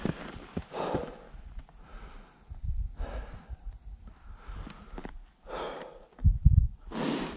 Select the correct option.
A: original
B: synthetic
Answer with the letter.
A